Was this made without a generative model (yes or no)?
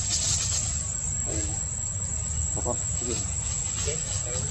yes